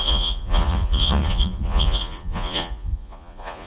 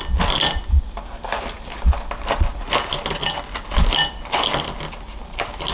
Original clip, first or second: second